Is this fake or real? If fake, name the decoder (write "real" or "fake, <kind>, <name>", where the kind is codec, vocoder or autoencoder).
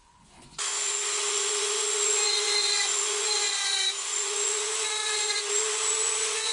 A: fake, vocoder, Vocos